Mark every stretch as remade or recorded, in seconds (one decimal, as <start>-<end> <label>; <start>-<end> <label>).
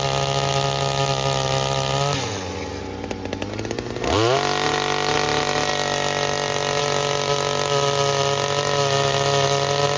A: 0.0-10.0 recorded